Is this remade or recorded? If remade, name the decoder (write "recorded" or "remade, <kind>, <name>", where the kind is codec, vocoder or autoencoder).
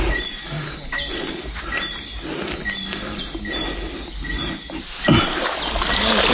recorded